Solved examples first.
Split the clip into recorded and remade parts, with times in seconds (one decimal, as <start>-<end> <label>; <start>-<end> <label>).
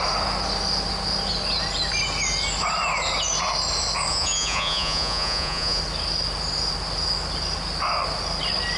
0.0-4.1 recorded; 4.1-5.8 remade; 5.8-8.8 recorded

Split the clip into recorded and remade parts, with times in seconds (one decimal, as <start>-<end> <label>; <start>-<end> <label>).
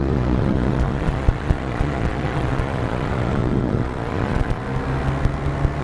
0.0-4.6 remade; 4.6-5.8 recorded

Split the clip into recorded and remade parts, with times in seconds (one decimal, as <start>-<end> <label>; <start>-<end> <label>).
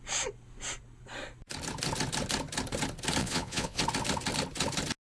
0.0-3.2 recorded; 3.2-3.8 remade; 3.8-5.0 recorded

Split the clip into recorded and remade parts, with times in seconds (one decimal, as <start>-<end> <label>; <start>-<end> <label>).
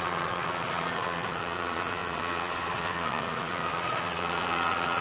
0.0-5.0 remade